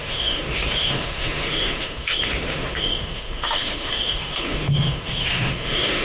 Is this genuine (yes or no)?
no